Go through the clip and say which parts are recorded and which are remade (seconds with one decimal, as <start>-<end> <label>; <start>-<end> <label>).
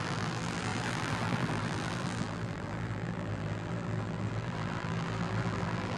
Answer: 0.0-6.0 remade